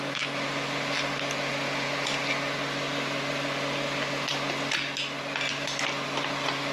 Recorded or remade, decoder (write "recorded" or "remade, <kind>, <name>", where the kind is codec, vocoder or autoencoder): recorded